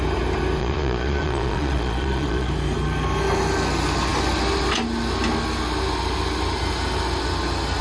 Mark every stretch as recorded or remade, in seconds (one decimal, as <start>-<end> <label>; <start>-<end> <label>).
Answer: 0.0-0.6 recorded; 0.6-2.5 remade; 2.5-7.8 recorded